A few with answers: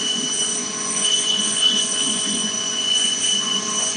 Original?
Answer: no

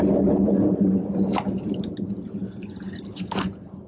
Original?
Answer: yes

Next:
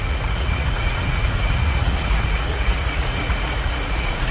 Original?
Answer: no